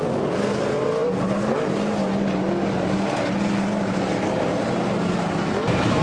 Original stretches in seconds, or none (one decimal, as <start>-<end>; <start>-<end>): 0.0-6.0